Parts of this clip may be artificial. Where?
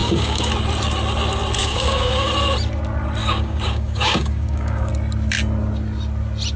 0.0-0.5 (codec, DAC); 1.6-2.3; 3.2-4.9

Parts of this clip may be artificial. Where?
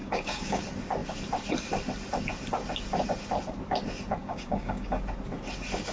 0.0-0.6 (codec, DAC); 4.2-5.0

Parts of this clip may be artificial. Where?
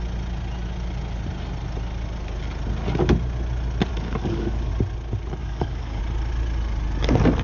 3.9-4.7 (codec, DAC); 5.4-6.0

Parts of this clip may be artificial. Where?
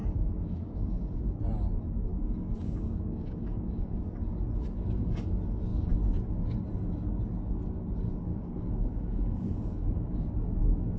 0.0-1.2 (codec, DAC); 2.1-3.9; 8.3-9.9